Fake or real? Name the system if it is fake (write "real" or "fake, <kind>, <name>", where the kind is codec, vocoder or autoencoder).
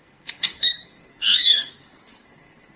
fake, codec, SNAC